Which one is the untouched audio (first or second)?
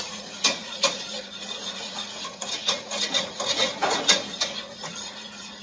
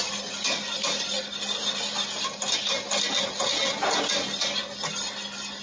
second